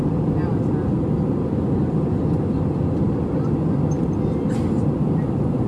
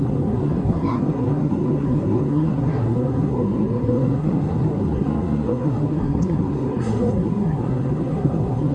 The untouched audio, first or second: first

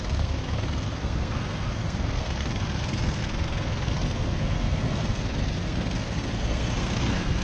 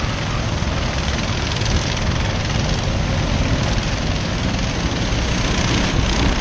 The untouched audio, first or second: second